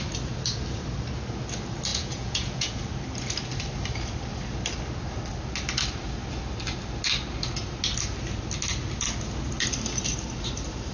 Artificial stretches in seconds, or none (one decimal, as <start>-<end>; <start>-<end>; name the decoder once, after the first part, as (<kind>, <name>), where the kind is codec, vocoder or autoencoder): 1.9-2.8 (vocoder, Vocos)